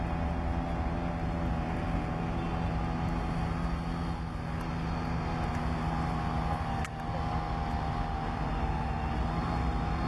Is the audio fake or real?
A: real